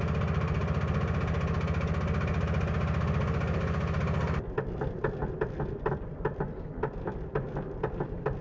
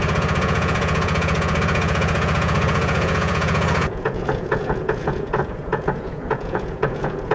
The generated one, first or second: second